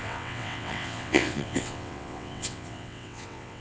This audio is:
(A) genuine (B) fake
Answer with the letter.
B